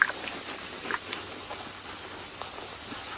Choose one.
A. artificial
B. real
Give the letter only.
B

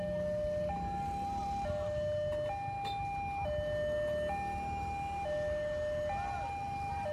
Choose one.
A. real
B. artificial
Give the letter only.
A